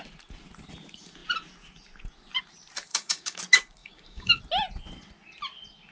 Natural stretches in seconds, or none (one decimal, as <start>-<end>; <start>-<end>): 0.0-2.9; 3.4-3.8; 4.4-5.9